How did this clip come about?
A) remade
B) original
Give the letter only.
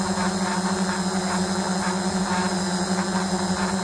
B